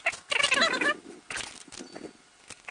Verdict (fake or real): real